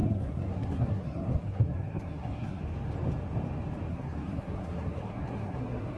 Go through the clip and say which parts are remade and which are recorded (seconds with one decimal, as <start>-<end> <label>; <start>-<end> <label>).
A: 0.0-2.6 remade; 2.6-3.9 recorded; 3.9-6.0 remade